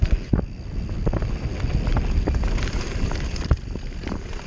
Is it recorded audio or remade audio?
recorded